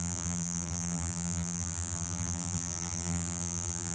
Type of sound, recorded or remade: remade